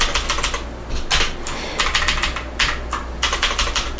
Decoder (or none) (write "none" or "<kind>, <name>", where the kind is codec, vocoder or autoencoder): none